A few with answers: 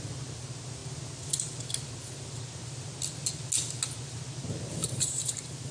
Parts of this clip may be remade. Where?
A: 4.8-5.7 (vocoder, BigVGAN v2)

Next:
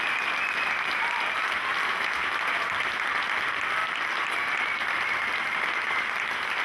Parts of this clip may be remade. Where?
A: 2.2-2.9 (vocoder, BigVGAN v2); 3.8-6.6